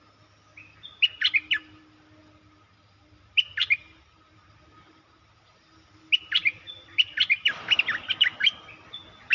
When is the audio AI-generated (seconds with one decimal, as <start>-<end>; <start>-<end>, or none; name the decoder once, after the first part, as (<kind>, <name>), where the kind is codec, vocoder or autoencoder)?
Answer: 1.2-1.8 (vocoder, BigVGAN v2); 2.2-4.0; 6.4-8.6